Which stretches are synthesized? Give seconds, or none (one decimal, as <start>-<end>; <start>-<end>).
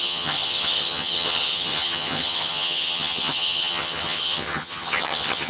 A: 0.0-5.5